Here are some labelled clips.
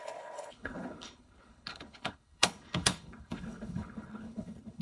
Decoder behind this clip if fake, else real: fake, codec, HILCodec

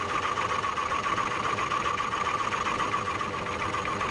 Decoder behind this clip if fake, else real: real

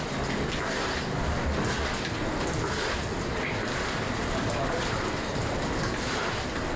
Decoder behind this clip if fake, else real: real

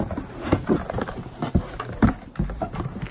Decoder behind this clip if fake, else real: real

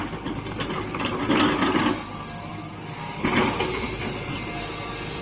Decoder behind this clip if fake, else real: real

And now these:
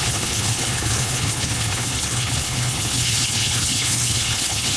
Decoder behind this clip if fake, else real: fake, codec, HILCodec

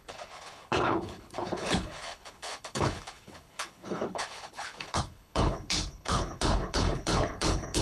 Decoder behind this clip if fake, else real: fake, codec, HILCodec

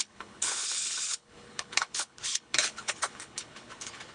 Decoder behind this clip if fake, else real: fake, codec, HILCodec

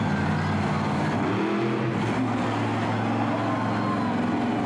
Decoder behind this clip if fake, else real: real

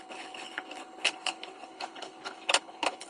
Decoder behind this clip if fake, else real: fake, codec, HILCodec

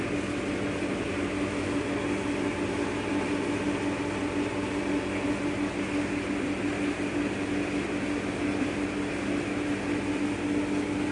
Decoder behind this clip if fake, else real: real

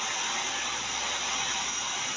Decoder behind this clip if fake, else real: real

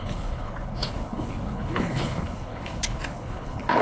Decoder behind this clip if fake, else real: fake, codec, HILCodec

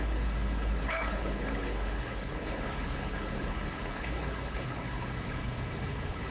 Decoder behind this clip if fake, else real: fake, codec, HILCodec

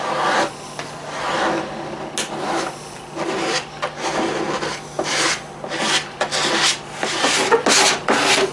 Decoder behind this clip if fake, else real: real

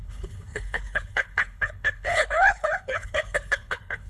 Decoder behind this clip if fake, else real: fake, codec, HILCodec